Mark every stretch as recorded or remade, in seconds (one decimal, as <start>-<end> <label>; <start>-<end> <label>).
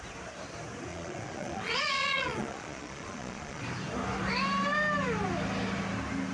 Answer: 0.0-0.9 recorded; 0.9-3.6 remade; 3.6-6.3 recorded